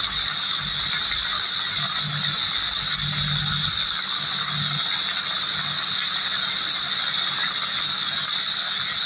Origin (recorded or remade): recorded